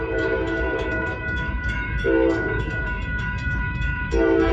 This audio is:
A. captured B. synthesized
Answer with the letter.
B